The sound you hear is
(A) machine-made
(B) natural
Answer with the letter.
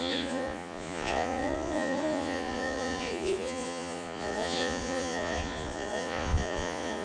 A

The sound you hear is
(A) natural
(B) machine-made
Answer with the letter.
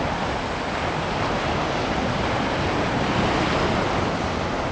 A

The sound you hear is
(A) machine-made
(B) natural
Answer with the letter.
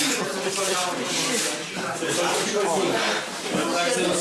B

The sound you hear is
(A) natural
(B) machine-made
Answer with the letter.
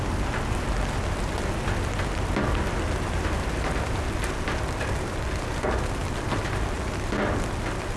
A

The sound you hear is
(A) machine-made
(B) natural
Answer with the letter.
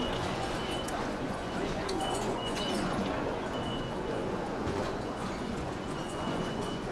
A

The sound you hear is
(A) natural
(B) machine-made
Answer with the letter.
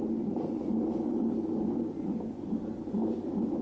A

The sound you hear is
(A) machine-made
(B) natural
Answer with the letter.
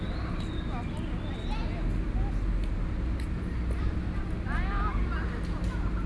B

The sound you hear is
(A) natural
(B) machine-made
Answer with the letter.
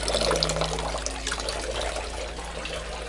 A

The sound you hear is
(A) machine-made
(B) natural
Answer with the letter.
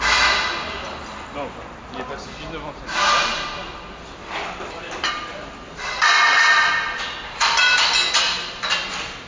B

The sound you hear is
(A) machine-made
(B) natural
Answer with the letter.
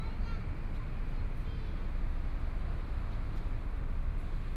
B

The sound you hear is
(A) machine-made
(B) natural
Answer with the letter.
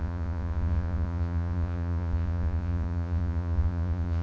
A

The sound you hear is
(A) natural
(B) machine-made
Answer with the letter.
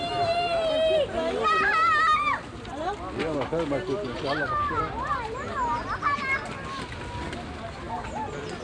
A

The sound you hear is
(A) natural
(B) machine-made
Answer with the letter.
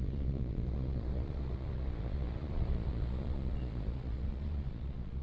B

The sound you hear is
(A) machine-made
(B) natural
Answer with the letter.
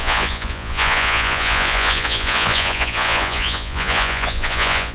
A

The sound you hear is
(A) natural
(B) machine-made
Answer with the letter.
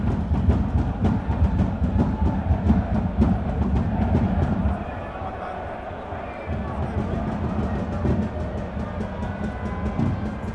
A